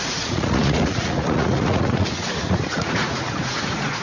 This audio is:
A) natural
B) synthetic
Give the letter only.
B